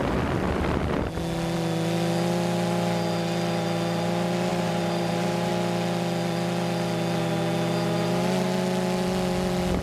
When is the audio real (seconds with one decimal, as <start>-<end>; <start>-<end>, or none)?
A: 0.0-4.5; 5.5-9.8